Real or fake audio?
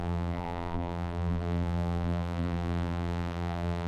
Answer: fake